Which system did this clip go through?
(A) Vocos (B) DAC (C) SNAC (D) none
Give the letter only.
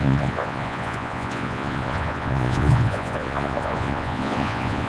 A